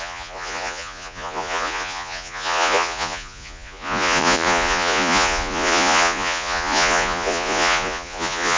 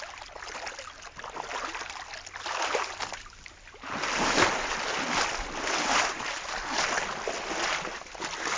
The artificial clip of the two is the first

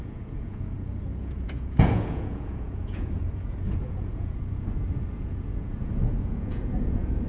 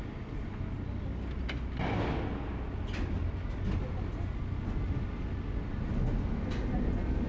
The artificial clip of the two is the first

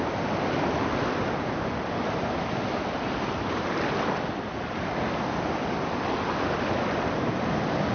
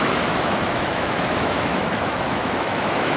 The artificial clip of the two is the second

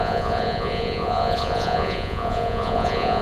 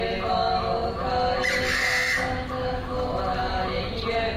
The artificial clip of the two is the first